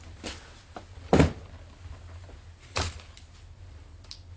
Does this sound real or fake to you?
real